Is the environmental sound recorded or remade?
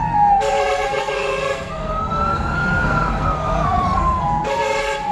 remade